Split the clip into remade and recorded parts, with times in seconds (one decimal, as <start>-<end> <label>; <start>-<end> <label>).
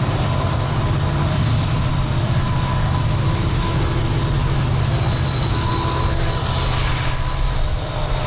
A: 0.0-4.0 remade; 4.0-7.1 recorded; 7.1-8.3 remade